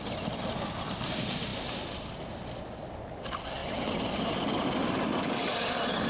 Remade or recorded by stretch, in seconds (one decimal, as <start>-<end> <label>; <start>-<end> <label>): 0.0-6.1 recorded